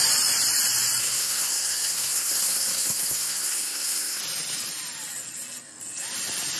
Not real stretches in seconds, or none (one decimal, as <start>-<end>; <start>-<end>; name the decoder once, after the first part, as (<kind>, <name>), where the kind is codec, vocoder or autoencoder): 1.0-4.2 (codec, SNAC)